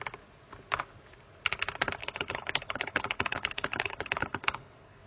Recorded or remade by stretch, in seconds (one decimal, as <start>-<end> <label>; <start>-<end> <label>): 0.0-2.0 recorded; 2.0-5.1 remade